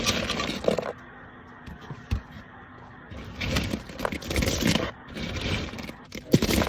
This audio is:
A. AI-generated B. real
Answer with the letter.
B